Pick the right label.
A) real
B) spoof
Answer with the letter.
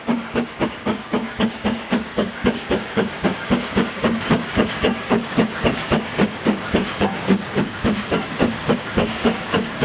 B